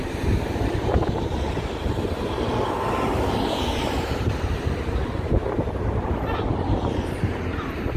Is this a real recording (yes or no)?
no